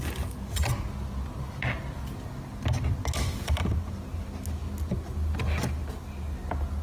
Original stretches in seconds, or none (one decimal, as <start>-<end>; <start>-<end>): 0.0-6.8